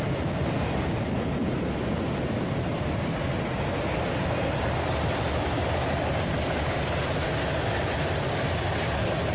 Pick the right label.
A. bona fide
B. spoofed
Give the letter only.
A